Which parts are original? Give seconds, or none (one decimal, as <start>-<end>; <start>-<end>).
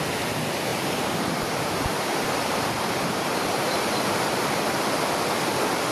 0.0-0.7; 4.2-5.9